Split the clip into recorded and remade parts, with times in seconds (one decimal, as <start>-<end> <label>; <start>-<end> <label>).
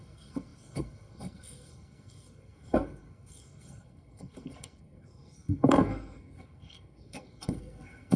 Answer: 0.0-8.2 remade